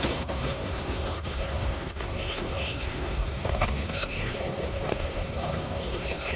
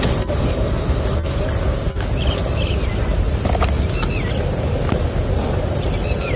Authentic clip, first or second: second